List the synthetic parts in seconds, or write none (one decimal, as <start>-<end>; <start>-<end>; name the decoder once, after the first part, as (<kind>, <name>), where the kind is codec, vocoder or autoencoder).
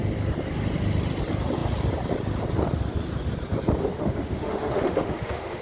3.8-5.6 (autoencoder, DAC-VAE)